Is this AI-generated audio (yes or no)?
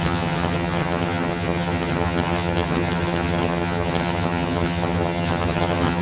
yes